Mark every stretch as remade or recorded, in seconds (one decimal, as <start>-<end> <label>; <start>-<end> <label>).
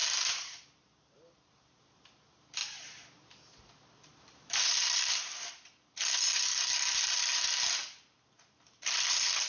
0.0-2.6 remade; 2.6-4.2 recorded; 4.2-9.5 remade